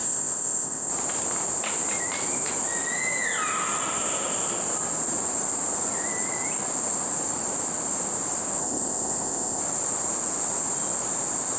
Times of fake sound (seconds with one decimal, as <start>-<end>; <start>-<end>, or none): 0.0-0.9; 8.6-9.6